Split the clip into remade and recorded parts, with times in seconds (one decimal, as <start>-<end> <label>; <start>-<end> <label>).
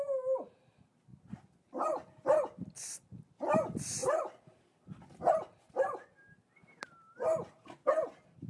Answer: 0.0-1.1 recorded; 1.1-3.3 remade; 3.3-4.0 recorded; 4.0-5.2 remade; 5.2-8.5 recorded